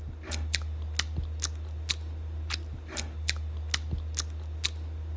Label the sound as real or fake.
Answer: real